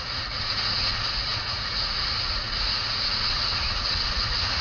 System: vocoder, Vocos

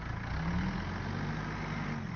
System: none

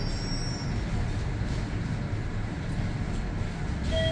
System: none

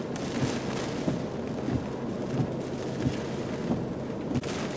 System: none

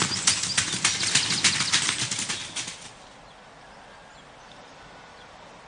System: none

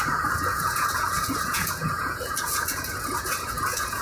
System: vocoder, Vocos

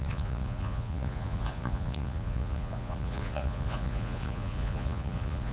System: vocoder, Vocos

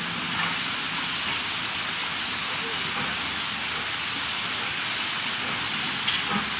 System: none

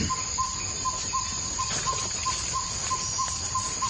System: none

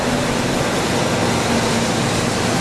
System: none